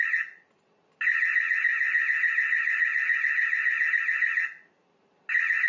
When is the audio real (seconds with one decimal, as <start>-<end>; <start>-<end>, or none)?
0.0-1.7; 3.9-5.7